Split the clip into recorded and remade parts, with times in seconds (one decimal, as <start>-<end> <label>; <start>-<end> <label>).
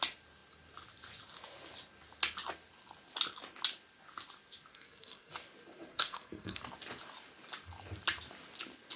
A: 0.0-4.7 recorded; 4.7-5.3 remade; 5.3-5.9 recorded; 5.9-6.7 remade; 6.7-9.0 recorded